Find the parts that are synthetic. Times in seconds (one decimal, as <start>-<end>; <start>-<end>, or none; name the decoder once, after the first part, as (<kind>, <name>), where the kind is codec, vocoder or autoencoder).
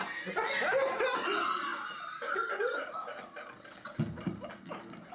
none